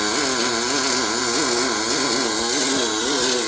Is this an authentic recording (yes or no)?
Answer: yes